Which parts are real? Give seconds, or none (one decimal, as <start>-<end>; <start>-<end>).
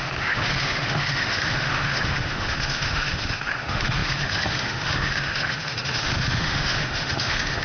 none